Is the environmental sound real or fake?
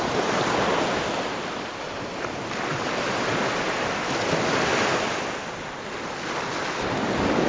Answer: real